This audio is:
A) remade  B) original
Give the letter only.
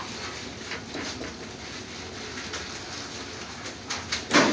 B